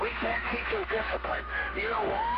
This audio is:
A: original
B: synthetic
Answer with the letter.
B